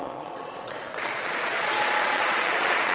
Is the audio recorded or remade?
remade